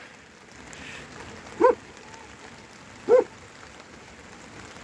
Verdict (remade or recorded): recorded